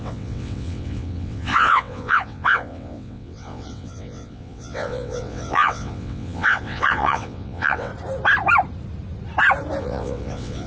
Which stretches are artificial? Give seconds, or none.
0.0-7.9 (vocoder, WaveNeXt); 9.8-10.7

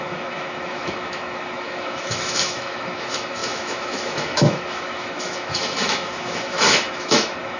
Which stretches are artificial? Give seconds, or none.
0.0-7.6 (autoencoder, DAC-VAE)

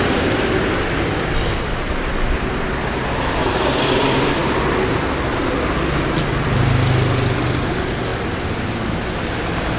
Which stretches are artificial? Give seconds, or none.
none